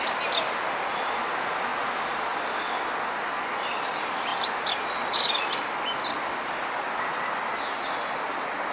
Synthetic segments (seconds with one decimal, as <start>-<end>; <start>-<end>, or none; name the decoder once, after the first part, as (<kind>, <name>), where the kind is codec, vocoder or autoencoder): none